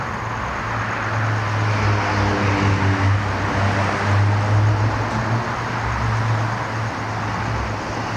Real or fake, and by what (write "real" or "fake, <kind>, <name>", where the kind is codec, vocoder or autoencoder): real